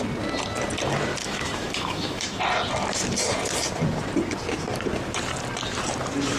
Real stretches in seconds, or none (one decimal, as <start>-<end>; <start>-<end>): 0.0-1.2; 2.4-6.4